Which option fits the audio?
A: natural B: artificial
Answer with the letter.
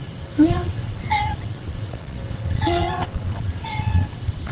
B